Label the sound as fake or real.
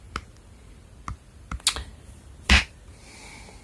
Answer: real